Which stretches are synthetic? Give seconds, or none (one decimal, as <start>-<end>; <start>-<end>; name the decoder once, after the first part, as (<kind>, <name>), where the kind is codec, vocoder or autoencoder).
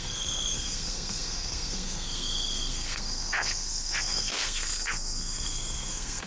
0.0-6.3 (codec, SNAC)